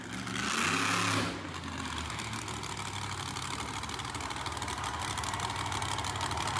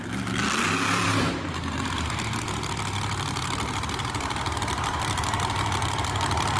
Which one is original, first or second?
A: first